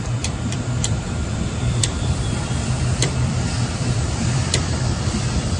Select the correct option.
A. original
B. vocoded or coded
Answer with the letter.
B